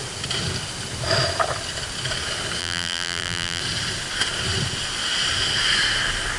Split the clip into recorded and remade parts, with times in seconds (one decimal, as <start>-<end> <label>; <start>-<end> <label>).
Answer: 0.0-2.6 recorded; 2.6-3.6 remade; 3.6-6.4 recorded